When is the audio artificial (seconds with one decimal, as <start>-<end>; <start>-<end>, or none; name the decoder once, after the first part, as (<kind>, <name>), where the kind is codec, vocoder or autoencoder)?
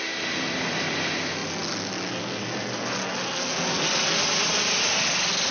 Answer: none